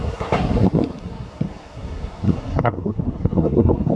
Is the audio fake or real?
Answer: fake